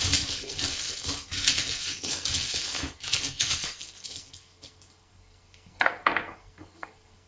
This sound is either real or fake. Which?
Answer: fake